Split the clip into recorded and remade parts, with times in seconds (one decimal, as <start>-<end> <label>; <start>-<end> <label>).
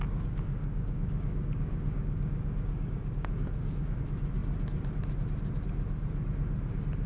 0.0-0.6 recorded; 0.6-4.0 remade; 4.0-7.1 recorded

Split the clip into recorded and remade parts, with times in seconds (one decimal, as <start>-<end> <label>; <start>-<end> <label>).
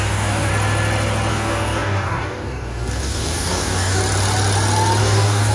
0.0-0.5 remade; 0.5-1.3 recorded; 1.3-4.0 remade; 4.0-5.0 recorded; 5.0-5.5 remade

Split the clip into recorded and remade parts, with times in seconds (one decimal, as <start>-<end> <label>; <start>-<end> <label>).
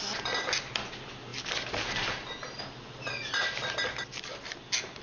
0.0-5.0 recorded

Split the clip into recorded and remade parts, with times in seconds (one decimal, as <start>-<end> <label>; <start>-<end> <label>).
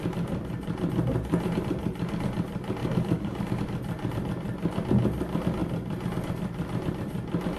0.0-2.8 recorded; 2.8-3.6 remade; 3.6-7.6 recorded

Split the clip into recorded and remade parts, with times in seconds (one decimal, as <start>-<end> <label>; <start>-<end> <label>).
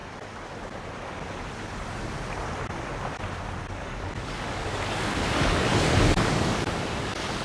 0.0-3.7 recorded; 3.7-7.4 remade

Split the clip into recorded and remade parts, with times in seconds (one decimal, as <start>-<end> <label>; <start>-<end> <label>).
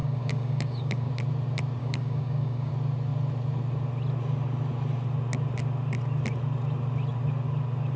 0.0-1.1 remade; 1.1-1.8 recorded; 1.8-2.7 remade; 2.7-8.0 recorded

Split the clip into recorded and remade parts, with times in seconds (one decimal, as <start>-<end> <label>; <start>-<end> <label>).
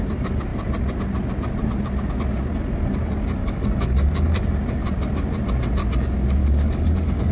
0.0-3.4 recorded; 3.4-4.4 remade; 4.4-6.4 recorded; 6.4-7.3 remade